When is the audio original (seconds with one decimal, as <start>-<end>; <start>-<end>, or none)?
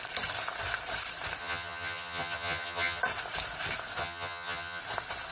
0.0-1.4; 3.0-4.0; 4.8-5.3